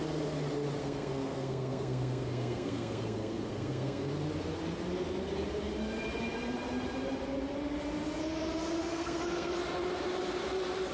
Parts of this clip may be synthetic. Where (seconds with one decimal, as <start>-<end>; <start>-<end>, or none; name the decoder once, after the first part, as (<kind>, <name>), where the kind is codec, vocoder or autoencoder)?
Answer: 0.8-4.1 (codec, SNAC); 8.9-9.5